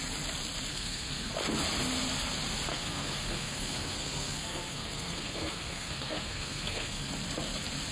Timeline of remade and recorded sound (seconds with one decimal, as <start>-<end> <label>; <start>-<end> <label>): 0.0-0.7 recorded; 0.7-1.3 remade; 1.3-2.7 recorded; 2.7-7.1 remade; 7.1-7.9 recorded